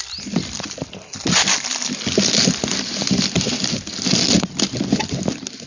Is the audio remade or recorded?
recorded